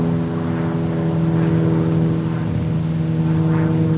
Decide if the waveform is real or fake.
real